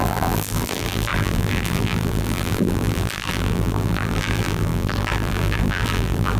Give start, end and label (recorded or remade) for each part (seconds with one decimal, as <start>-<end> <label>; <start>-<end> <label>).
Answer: 0.0-6.4 remade